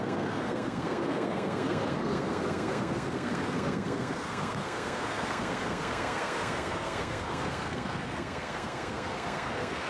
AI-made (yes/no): yes